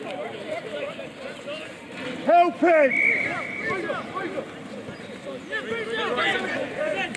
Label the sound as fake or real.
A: real